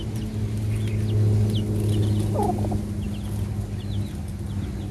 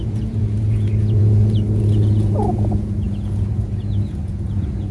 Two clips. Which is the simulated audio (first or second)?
second